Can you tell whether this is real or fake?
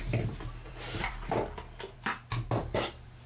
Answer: fake